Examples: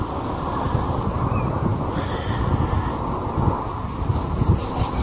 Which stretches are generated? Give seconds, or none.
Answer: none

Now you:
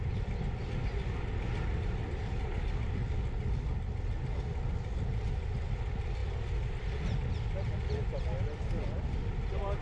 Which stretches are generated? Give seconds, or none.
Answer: none

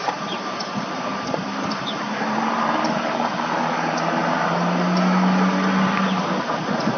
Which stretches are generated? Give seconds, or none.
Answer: 0.0-2.4 (vocoder, BigVGAN v2)

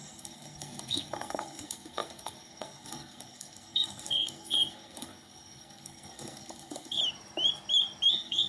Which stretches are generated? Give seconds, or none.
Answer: 0.0-7.0 (codec, SNAC); 8.1-8.5

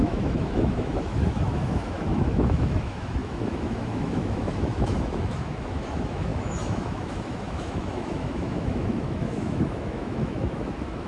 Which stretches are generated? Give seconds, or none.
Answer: 0.0-11.1 (autoencoder, DAC-VAE)

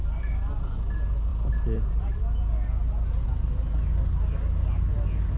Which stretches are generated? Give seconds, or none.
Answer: 1.3-2.2 (vocoder, BigVGAN v2)

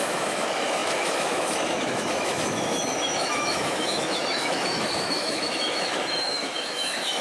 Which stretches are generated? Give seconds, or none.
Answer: 0.0-7.2 (autoencoder, DAC-VAE)